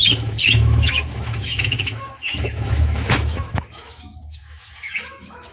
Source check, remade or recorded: remade